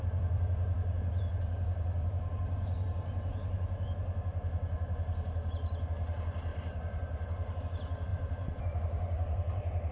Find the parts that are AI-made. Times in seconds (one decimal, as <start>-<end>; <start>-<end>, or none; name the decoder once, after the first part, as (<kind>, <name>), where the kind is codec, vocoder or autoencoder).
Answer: 6.5-7.6 (vocoder, BigVGAN v2); 8.1-9.9